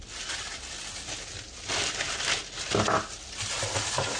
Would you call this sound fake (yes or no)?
no